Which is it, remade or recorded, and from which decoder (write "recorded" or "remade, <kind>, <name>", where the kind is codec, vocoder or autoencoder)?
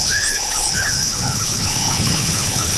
remade, codec, HILCodec